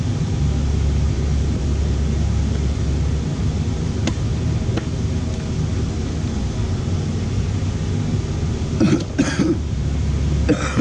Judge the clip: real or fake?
real